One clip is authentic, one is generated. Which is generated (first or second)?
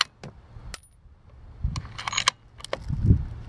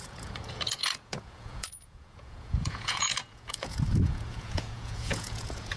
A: second